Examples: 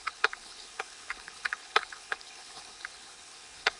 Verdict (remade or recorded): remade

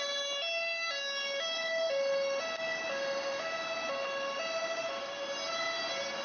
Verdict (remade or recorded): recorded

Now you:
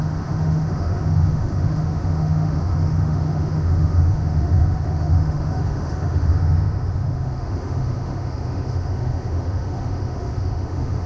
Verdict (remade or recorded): remade